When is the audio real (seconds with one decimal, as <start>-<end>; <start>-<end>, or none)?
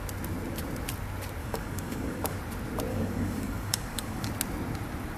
0.0-1.4; 2.4-2.9; 4.3-5.2